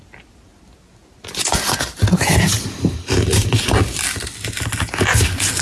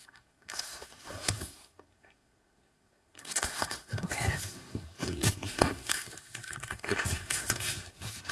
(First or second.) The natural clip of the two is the first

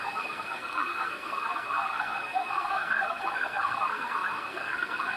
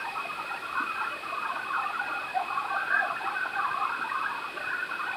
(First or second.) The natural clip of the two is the second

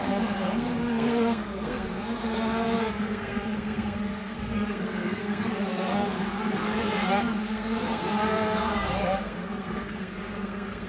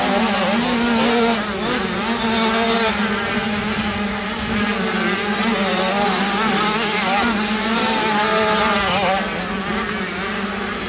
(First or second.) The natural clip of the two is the second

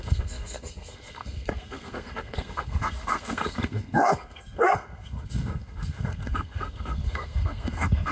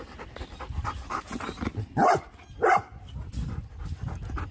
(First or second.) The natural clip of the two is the second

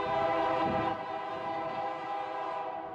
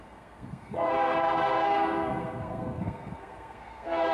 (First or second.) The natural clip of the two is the first